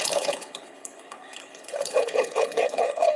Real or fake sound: fake